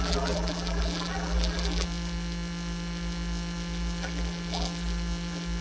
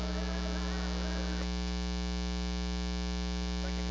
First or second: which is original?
second